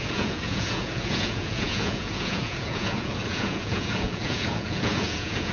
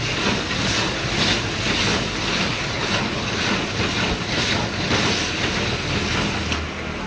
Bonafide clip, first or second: second